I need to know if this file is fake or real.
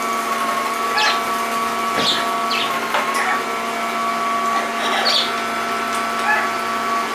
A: real